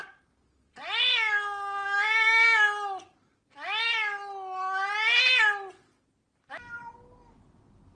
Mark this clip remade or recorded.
recorded